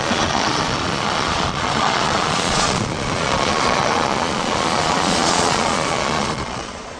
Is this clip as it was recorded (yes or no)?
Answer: no